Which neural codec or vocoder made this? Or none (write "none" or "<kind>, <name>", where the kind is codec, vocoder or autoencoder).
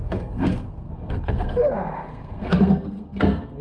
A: codec, SNAC